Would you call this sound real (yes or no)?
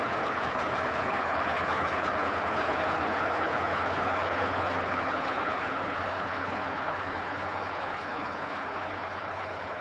no